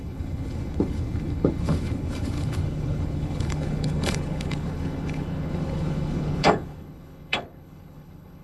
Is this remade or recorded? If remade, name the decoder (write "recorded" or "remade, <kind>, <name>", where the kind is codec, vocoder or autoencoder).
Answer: remade, codec, HILCodec